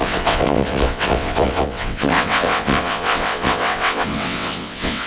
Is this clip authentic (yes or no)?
no